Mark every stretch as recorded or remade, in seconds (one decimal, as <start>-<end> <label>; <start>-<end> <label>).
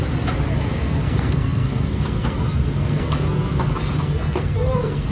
0.0-0.7 recorded; 0.7-3.5 remade; 3.5-4.0 recorded; 4.0-5.1 remade